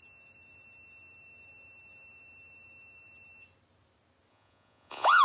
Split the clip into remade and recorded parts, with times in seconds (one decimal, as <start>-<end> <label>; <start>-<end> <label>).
0.0-4.3 recorded; 4.3-5.2 remade